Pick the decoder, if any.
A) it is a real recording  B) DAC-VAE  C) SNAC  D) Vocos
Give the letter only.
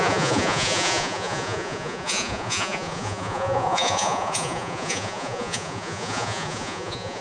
D